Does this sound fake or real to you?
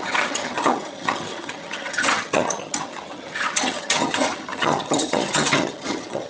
fake